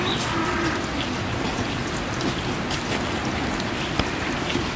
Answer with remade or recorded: recorded